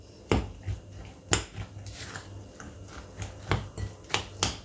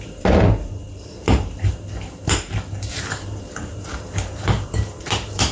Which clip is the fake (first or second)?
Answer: second